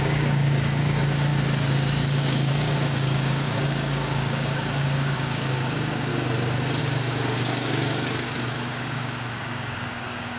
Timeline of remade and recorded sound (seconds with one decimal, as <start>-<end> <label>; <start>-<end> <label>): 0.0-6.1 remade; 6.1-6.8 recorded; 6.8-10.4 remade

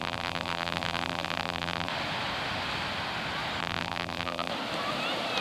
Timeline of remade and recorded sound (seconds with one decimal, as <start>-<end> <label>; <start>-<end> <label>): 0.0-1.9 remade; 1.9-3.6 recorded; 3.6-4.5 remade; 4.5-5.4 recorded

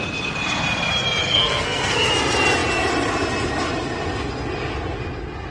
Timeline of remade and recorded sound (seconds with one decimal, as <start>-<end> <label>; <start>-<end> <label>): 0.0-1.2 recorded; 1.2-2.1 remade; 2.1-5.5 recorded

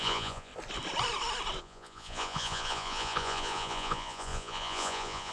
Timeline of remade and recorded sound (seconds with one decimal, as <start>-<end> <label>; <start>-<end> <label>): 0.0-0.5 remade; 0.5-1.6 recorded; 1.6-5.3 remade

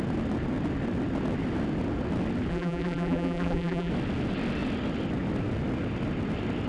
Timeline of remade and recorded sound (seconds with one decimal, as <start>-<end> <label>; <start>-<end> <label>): 0.0-2.5 recorded; 2.5-3.9 remade; 3.9-6.7 recorded

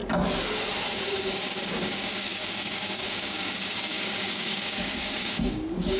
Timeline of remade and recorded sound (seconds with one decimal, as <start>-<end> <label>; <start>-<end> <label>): 0.0-0.9 recorded; 0.9-6.0 remade